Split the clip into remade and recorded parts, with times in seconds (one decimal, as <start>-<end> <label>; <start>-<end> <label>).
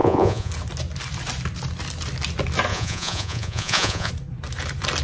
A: 0.0-0.5 remade; 0.5-2.7 recorded; 2.7-4.1 remade; 4.1-5.0 recorded